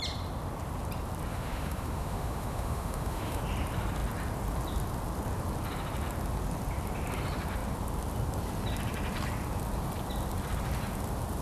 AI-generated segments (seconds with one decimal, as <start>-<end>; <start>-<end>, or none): 1.3-3.4